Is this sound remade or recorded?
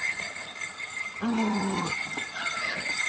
remade